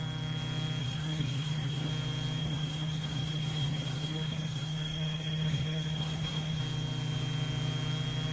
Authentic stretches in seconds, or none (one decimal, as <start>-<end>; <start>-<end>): 0.0-0.8; 1.9-2.4; 6.6-8.3